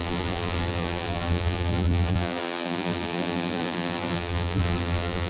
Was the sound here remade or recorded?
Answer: remade